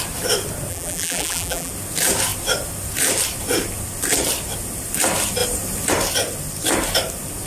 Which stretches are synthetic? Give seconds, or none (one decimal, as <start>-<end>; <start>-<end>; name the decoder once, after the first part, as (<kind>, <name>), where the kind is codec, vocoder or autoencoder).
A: 0.7-1.7 (vocoder, BigVGAN v2)